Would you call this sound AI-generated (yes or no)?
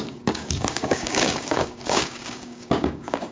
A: yes